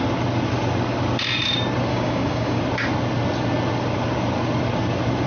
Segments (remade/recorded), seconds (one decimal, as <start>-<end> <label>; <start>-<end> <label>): 0.0-1.9 recorded; 1.9-2.6 remade; 2.6-5.3 recorded